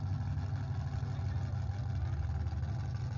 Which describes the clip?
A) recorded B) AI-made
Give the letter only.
A